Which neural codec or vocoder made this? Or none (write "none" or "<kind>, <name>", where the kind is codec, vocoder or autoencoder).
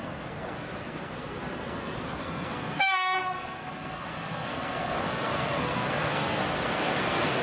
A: codec, SNAC